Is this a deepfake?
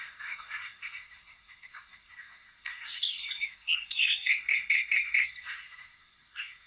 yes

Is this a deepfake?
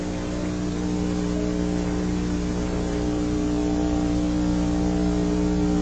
no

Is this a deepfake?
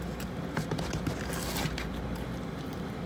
no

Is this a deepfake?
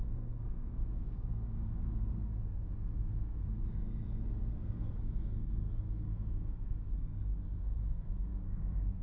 yes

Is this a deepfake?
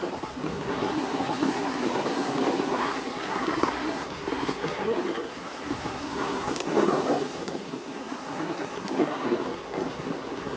yes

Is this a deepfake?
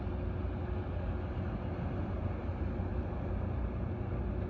no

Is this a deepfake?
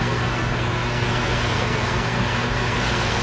yes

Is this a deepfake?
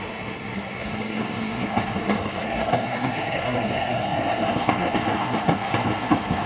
yes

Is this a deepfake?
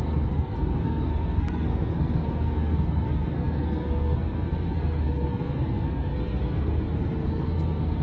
yes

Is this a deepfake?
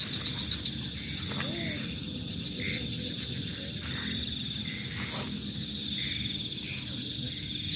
no